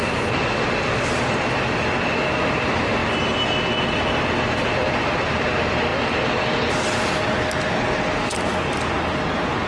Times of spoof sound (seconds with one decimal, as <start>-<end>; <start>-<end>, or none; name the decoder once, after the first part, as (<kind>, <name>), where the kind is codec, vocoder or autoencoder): none